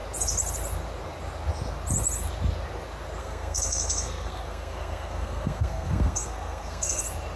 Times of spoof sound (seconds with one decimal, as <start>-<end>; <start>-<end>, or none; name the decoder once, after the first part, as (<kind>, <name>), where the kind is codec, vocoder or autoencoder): 3.2-7.0 (codec, SNAC)